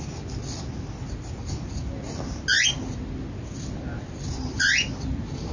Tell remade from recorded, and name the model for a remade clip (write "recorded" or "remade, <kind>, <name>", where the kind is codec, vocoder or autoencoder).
recorded